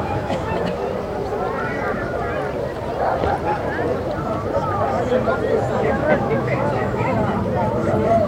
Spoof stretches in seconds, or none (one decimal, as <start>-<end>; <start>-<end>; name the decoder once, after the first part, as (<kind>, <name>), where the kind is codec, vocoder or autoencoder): 0.0-0.8 (autoencoder, DAC-VAE); 5.8-7.1